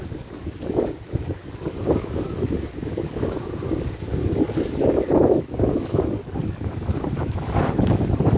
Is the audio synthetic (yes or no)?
yes